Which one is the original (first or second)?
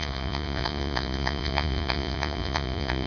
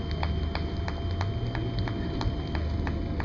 second